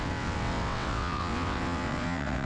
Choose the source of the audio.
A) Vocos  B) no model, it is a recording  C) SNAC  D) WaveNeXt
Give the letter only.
D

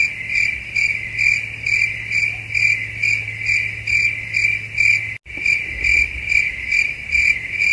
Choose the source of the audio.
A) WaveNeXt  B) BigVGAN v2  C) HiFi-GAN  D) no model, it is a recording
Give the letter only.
D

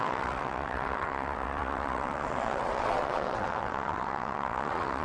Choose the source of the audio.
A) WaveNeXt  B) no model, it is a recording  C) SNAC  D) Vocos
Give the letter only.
A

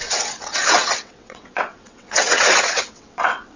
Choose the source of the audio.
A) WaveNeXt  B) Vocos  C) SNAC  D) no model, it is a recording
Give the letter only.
A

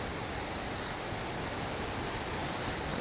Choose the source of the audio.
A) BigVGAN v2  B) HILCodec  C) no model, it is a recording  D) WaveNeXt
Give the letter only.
C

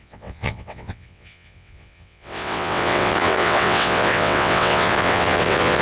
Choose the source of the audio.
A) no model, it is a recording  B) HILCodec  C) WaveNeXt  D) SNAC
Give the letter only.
C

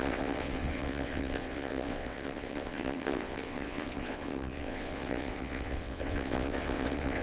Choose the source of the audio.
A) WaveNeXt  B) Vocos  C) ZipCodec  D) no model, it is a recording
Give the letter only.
A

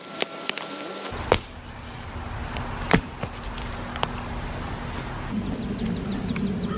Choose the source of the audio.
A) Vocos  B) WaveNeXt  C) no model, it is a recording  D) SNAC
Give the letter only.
C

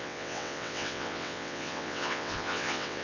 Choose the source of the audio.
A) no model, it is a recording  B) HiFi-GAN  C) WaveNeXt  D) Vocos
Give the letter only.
C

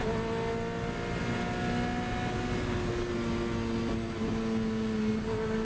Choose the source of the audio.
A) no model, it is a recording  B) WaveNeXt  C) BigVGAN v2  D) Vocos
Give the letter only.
A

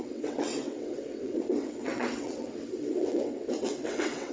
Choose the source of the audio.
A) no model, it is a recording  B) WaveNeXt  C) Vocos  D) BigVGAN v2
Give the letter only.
B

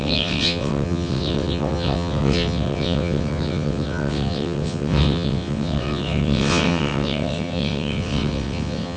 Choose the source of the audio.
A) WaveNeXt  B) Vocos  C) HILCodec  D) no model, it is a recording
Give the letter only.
A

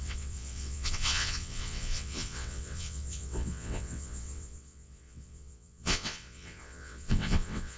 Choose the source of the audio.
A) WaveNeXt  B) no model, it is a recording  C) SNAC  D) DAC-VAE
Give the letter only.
A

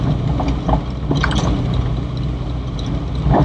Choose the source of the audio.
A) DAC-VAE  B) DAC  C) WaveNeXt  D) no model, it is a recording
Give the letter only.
D